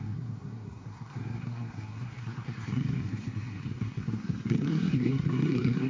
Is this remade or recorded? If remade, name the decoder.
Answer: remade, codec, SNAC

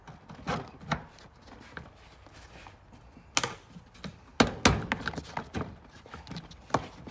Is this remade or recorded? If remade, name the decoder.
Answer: recorded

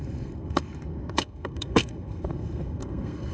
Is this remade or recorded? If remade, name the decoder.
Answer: remade, codec, SNAC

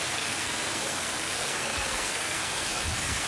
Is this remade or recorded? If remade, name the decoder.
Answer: remade, codec, SNAC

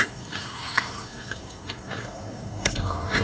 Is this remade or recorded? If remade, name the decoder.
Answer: remade, codec, SNAC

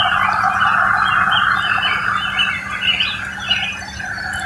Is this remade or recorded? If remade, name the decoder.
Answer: recorded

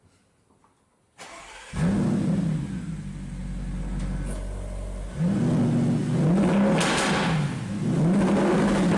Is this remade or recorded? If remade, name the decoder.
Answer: recorded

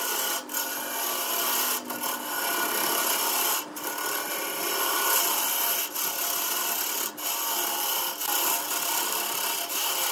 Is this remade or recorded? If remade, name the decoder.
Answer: recorded